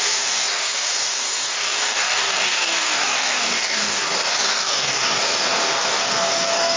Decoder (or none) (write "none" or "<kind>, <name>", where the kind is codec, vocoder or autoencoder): codec, DAC